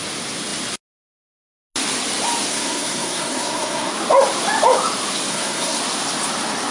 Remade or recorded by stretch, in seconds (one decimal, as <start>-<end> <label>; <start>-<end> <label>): 0.0-2.5 recorded; 2.5-3.9 remade; 3.9-5.3 recorded; 5.3-5.8 remade; 5.8-6.7 recorded

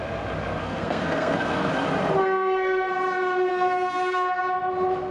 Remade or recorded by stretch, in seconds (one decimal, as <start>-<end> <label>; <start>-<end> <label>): 0.0-0.6 recorded; 0.6-1.7 remade; 1.7-2.2 recorded; 2.2-2.9 remade; 2.9-3.5 recorded; 3.5-4.4 remade; 4.4-5.1 recorded